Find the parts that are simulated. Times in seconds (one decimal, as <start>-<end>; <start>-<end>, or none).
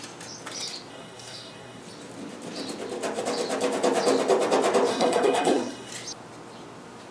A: 0.9-1.8; 4.9-5.9